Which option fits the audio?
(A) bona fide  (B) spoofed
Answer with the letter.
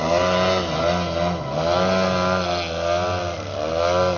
A